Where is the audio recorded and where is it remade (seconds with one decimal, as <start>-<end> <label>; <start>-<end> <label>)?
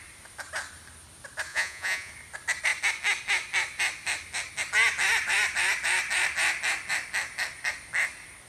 0.0-1.5 recorded; 1.5-2.1 remade; 2.1-8.5 recorded